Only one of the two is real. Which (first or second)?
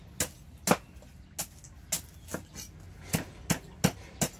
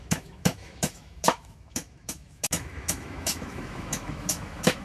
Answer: first